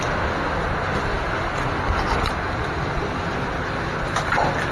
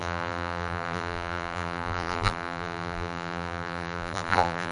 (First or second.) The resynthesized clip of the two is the second